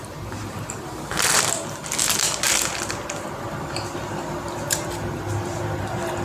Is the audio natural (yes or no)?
yes